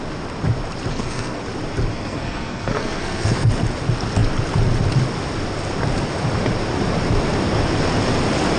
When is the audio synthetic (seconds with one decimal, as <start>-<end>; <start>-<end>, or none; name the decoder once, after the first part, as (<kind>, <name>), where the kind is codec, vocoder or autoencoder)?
0.9-1.4 (codec, SNAC); 1.9-3.5